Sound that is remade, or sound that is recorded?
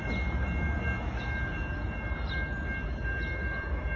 recorded